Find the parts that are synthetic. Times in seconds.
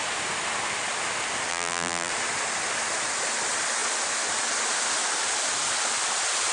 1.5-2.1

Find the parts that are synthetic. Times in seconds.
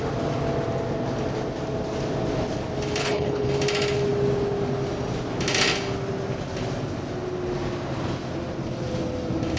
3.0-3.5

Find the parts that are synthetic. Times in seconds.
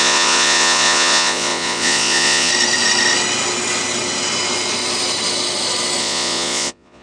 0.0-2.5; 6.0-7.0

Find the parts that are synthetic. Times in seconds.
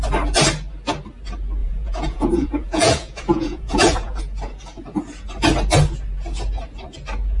1.6-4.2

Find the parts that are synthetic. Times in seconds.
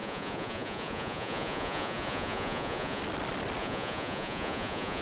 0.0-3.0; 3.6-5.0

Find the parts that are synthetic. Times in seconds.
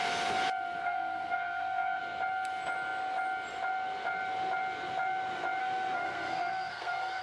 0.8-2.0; 5.6-7.2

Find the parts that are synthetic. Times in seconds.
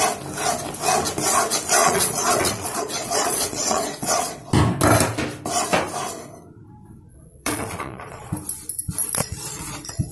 1.8-4.5; 7.1-8.3; 9.2-10.1